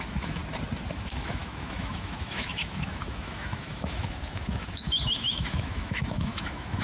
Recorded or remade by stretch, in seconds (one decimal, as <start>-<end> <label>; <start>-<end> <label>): 0.0-0.4 remade; 0.4-1.0 recorded; 1.0-6.8 remade